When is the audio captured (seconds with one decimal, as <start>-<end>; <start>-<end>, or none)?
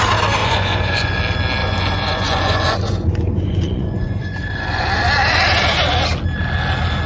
0.0-0.4; 1.2-1.6; 4.8-7.1